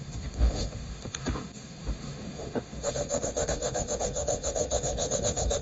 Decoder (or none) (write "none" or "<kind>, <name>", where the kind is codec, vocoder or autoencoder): autoencoder, DAC-VAE